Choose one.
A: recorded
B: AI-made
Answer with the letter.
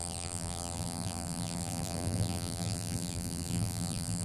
B